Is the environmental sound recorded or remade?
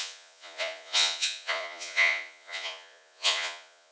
remade